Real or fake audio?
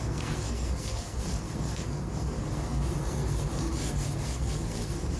fake